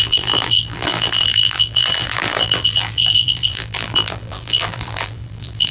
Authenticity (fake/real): fake